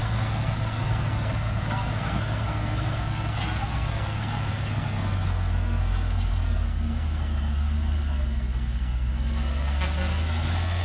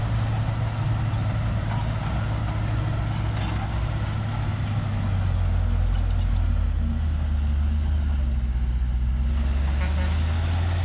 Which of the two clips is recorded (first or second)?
second